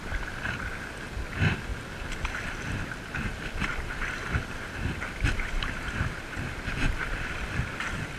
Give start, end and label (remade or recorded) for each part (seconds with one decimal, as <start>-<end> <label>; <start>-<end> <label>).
0.0-8.2 recorded